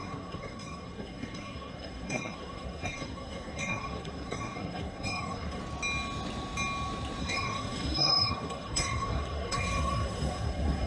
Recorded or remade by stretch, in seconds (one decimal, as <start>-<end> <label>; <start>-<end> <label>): 0.0-5.6 remade; 5.6-7.2 recorded; 7.2-10.9 remade